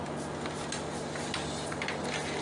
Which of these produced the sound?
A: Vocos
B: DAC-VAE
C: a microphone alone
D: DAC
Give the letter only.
C